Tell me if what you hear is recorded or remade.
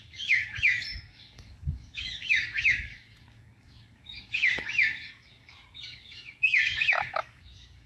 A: remade